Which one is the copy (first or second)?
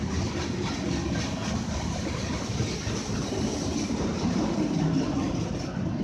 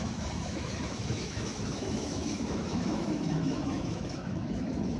second